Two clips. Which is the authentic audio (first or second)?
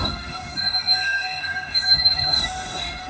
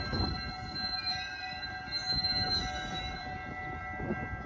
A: second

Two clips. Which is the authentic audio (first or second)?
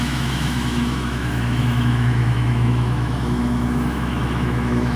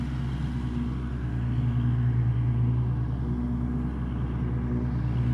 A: second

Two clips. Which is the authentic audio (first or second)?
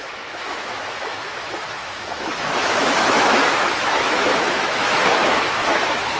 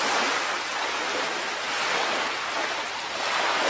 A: second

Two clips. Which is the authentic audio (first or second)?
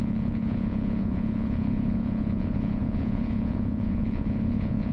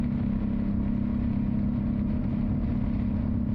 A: second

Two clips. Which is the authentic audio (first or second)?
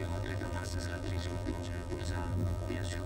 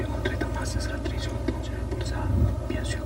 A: second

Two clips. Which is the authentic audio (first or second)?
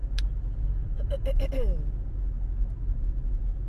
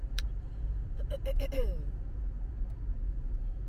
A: first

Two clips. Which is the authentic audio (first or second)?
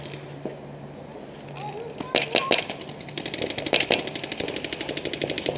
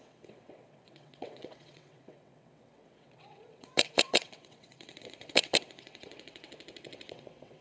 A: first